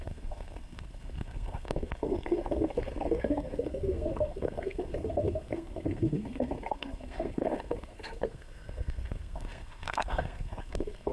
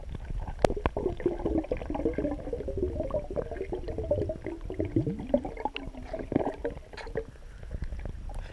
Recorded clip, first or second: second